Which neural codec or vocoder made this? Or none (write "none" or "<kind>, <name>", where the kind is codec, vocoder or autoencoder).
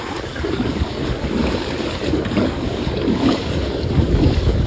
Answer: codec, DAC